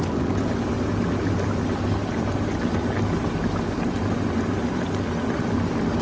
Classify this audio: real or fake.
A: real